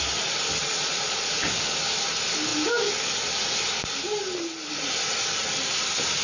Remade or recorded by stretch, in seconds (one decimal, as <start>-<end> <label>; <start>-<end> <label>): 0.0-0.6 recorded; 0.6-1.3 remade; 1.3-6.2 recorded